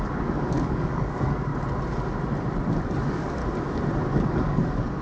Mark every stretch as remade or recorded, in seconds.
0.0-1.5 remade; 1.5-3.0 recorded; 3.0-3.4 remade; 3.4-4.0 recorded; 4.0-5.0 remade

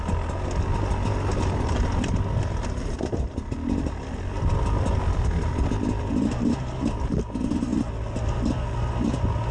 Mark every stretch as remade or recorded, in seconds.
0.0-9.5 recorded

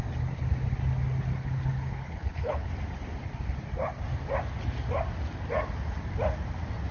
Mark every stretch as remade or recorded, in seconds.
0.0-1.3 recorded; 1.3-2.7 remade; 2.7-6.9 recorded

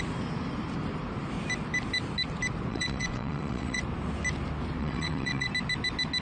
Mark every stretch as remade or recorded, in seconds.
0.0-2.7 recorded; 2.7-3.8 remade; 3.8-4.8 recorded; 4.8-5.5 remade; 5.5-6.2 recorded

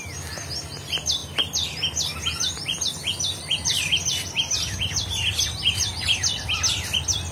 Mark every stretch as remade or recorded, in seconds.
0.0-7.3 recorded